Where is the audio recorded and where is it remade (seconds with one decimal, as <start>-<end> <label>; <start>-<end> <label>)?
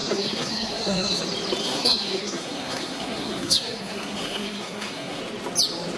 0.0-1.2 remade; 1.2-1.6 recorded; 1.6-5.2 remade; 5.2-6.0 recorded